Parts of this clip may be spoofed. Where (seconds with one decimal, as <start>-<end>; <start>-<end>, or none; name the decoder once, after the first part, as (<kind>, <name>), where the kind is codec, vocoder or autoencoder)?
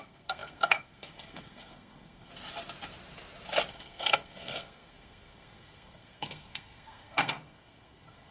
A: 0.0-2.3 (codec, SNAC); 3.7-8.3